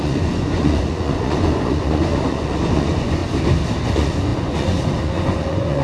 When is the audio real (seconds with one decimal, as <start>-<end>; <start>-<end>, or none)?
3.2-3.8